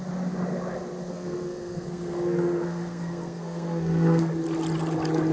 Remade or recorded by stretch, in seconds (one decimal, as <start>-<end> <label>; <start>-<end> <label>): 0.0-1.1 recorded; 1.1-4.3 remade; 4.3-5.3 recorded